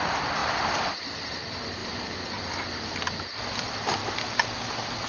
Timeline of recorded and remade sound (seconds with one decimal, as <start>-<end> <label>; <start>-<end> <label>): 0.0-0.4 recorded; 0.4-1.3 remade; 1.3-1.8 recorded; 1.8-2.9 remade; 2.9-5.1 recorded